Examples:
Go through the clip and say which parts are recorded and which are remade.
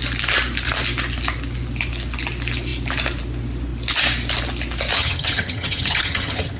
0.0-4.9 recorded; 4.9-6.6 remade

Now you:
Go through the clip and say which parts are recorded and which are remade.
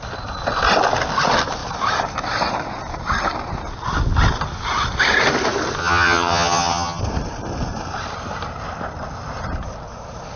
0.0-5.8 recorded; 5.8-7.0 remade; 7.0-10.4 recorded